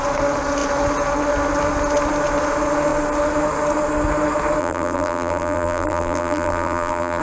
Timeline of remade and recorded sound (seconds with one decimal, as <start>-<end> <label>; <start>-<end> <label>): 0.0-4.6 recorded; 4.6-7.2 remade

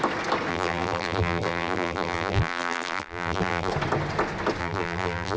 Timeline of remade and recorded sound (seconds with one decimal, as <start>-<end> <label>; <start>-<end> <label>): 0.0-0.5 recorded; 0.5-3.7 remade; 3.7-4.6 recorded; 4.6-5.4 remade

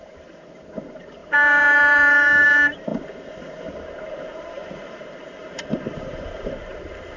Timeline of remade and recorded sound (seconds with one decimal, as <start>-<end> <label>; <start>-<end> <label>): 0.0-2.9 remade; 2.9-3.4 recorded; 3.4-7.2 remade

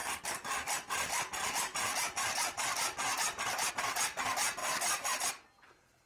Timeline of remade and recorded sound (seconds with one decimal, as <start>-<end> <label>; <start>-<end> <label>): 0.0-3.7 remade; 3.7-4.6 recorded; 4.6-5.3 remade; 5.3-6.1 recorded

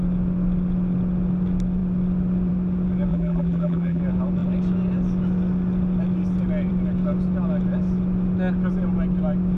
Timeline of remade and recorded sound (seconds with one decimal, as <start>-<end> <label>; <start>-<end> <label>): 0.0-3.1 recorded; 3.1-4.0 remade; 4.0-9.6 recorded